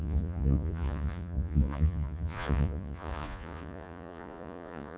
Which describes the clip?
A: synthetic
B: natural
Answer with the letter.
A